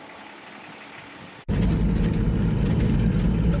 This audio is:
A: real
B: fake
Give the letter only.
A